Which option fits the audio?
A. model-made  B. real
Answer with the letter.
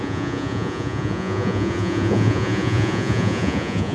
A